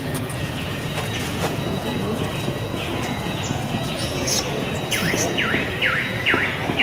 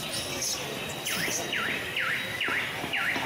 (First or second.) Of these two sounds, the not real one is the first